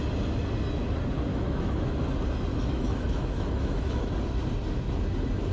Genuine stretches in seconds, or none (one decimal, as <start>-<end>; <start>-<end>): 0.0-1.3; 1.9-2.5; 4.1-5.5